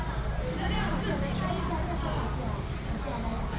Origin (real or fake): real